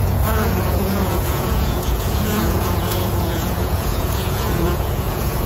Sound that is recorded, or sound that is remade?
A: remade